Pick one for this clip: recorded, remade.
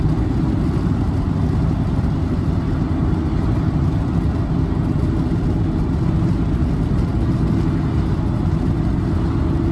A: recorded